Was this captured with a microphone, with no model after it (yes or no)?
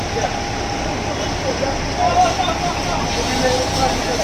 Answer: yes